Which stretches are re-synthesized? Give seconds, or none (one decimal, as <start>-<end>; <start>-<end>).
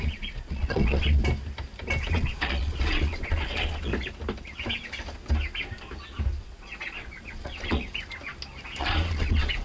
0.0-1.2; 2.1-3.9; 6.4-7.9; 8.8-9.6